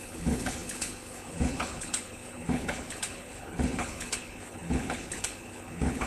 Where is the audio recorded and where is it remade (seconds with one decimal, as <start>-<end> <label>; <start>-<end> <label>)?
0.0-6.1 remade